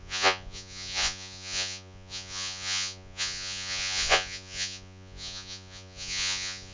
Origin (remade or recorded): remade